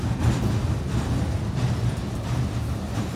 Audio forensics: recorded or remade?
recorded